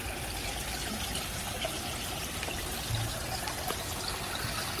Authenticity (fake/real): real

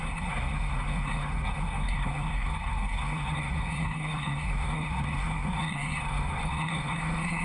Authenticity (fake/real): fake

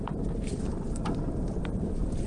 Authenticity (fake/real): fake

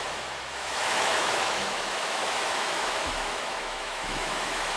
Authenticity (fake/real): fake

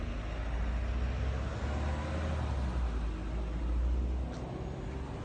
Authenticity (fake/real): real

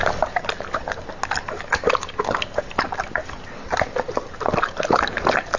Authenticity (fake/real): real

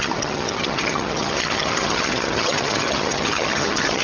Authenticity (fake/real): fake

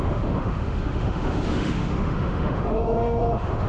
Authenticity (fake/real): fake